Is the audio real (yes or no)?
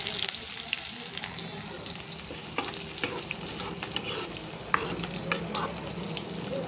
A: yes